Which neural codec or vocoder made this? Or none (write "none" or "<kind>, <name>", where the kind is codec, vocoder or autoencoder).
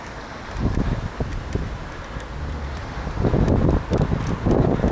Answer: none